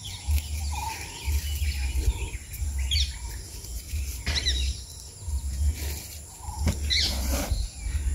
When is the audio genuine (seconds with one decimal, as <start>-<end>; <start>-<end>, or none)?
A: 0.0-8.1